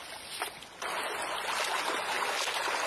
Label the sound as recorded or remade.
recorded